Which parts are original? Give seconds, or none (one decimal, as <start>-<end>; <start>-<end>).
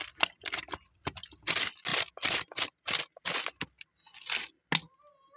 0.0-5.4